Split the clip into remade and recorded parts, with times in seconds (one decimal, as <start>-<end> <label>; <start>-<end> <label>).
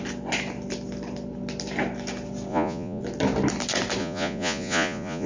0.0-2.5 recorded; 2.5-3.0 remade; 3.0-4.0 recorded; 4.0-5.3 remade